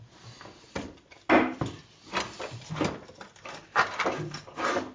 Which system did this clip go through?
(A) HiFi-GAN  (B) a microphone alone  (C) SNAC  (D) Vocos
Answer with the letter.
B